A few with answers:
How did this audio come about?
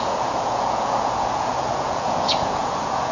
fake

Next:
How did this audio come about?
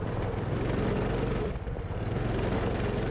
real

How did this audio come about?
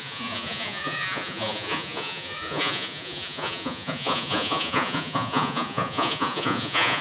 fake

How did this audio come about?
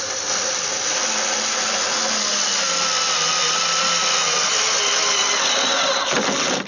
real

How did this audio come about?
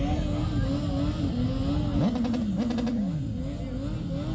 real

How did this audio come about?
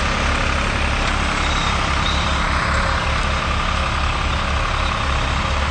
real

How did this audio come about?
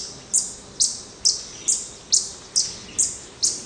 real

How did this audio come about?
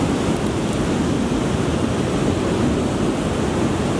real